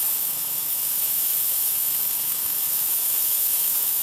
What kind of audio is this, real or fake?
fake